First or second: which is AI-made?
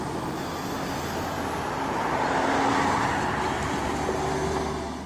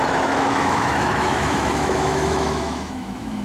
second